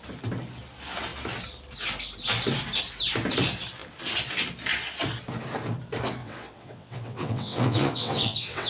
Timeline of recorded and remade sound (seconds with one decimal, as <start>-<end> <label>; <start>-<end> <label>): 0.0-6.2 recorded; 6.2-8.7 remade